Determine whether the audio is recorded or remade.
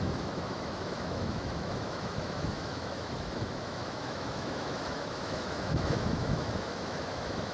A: remade